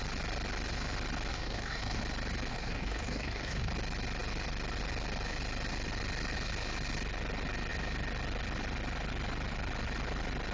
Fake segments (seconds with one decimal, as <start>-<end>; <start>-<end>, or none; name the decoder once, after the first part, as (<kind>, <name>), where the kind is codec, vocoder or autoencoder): 1.3-2.0 (codec, DAC); 2.5-3.7

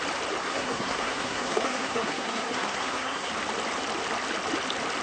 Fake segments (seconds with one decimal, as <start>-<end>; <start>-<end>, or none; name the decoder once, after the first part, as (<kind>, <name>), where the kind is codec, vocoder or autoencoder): 0.4-3.3 (codec, SNAC)

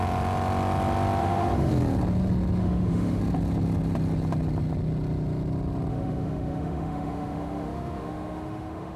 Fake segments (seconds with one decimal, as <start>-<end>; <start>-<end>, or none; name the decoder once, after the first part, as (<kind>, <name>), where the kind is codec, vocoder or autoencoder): 1.2-1.7 (autoencoder, DAC-VAE); 2.6-3.2; 5.9-9.0

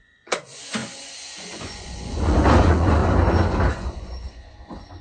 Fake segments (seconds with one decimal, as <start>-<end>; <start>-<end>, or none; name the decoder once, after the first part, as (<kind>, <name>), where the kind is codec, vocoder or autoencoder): 0.0-3.0 (vocoder, Vocos); 3.7-5.0

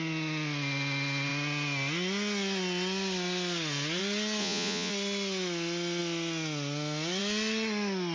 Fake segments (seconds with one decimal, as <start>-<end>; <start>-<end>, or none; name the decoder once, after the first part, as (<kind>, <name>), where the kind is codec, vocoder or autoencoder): 4.4-4.9 (vocoder, Vocos)

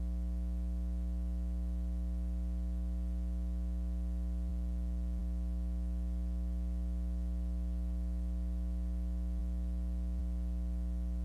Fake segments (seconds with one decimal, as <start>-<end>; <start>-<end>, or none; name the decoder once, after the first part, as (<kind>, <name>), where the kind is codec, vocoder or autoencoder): none

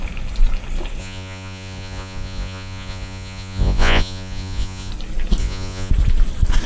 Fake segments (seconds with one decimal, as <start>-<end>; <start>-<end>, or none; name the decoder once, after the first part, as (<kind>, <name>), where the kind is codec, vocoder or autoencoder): 1.0-4.9 (vocoder, Vocos); 5.4-5.9

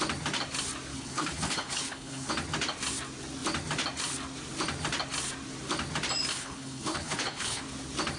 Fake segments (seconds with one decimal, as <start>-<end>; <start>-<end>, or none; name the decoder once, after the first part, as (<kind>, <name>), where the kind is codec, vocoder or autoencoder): 0.9-2.3 (codec, HILCodec); 6.3-7.6